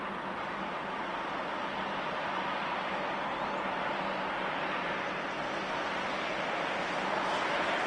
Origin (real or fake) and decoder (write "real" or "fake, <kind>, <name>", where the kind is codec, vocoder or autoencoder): real